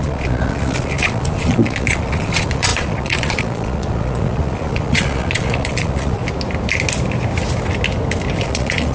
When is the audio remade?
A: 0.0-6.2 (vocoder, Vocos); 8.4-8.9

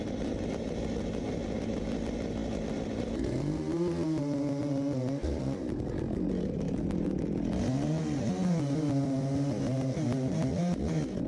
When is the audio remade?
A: none

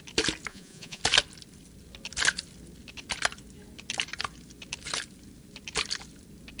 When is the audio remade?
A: 0.5-1.0 (vocoder, Vocos)

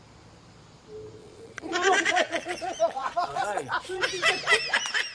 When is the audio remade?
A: 1.2-4.0 (vocoder, Vocos)

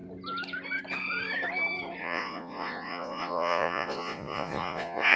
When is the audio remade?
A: 2.0-5.2 (vocoder, Vocos)

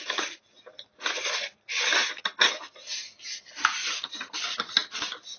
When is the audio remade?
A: none